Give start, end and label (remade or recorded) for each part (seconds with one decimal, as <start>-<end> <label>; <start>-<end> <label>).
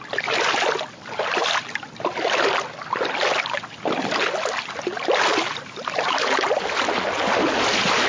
0.0-8.1 recorded